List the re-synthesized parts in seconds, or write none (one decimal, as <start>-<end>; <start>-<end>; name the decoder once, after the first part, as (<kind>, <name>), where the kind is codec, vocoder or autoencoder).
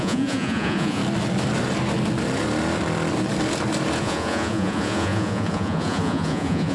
0.0-1.0 (vocoder, Vocos); 4.0-6.7